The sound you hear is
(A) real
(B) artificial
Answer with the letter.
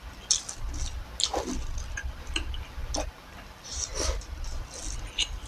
A